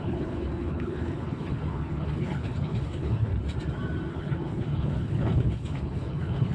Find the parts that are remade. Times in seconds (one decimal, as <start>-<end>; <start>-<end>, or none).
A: 0.0-3.3; 4.1-6.5